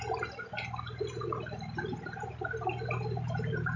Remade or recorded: recorded